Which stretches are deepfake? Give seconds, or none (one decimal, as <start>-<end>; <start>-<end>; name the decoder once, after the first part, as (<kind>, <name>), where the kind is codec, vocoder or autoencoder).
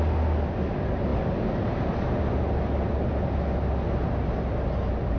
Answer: none